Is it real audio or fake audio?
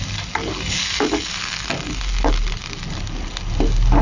real